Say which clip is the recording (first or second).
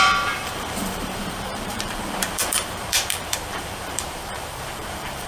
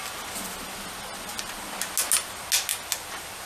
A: second